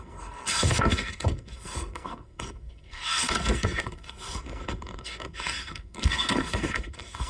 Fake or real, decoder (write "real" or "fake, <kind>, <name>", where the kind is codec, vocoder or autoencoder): fake, codec, SNAC